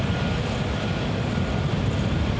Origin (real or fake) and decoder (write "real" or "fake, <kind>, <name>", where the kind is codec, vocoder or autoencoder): real